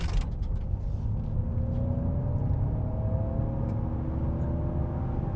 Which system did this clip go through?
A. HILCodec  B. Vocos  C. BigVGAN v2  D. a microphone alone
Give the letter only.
D